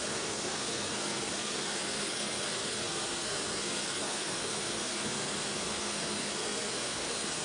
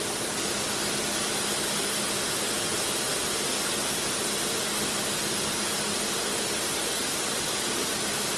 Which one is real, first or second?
second